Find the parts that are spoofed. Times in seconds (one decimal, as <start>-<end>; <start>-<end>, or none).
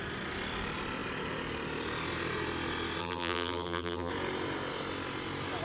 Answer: 3.0-4.1